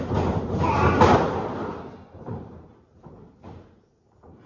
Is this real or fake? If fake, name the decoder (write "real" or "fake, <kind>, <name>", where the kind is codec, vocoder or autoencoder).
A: real